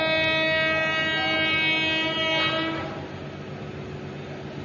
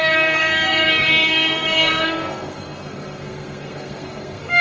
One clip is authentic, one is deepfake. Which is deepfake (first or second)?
second